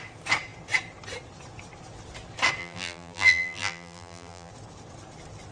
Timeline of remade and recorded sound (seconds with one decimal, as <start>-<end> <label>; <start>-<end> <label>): 0.0-2.6 recorded; 2.6-4.5 remade; 4.5-5.5 recorded